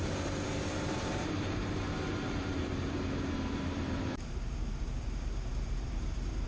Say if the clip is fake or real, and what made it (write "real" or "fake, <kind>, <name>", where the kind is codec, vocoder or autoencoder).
fake, vocoder, BigVGAN v2